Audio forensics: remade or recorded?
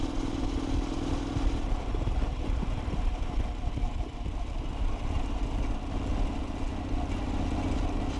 recorded